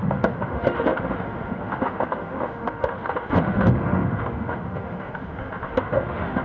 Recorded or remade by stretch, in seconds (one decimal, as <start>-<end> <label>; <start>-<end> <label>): 0.0-6.4 remade